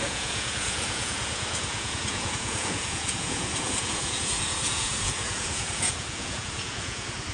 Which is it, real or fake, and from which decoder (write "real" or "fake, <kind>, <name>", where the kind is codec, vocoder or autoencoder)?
fake, vocoder, Vocos